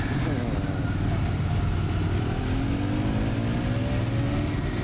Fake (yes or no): no